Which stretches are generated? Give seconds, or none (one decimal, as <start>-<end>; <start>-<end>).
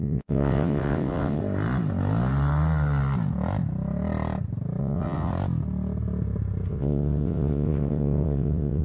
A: 0.0-1.4; 4.8-5.3; 6.7-8.8